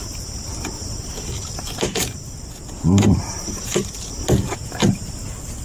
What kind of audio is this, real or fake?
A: real